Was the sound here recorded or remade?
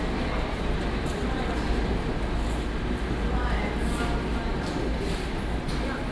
recorded